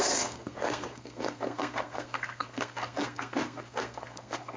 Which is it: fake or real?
fake